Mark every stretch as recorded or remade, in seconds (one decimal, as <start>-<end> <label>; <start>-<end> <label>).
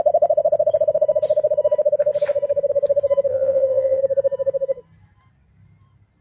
0.0-3.3 recorded; 3.3-4.0 remade; 4.0-6.2 recorded